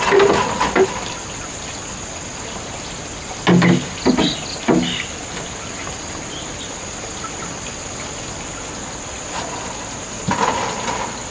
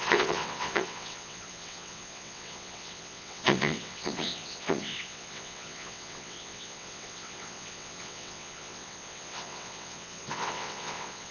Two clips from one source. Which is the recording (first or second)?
first